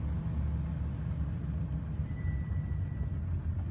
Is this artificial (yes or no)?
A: no